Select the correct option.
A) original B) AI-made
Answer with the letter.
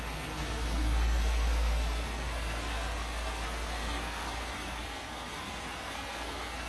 B